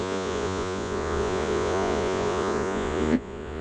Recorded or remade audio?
remade